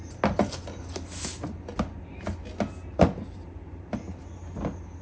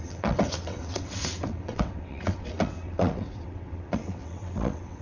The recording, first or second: first